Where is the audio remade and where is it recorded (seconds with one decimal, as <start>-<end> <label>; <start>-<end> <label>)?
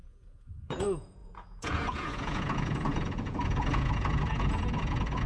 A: 0.0-5.3 remade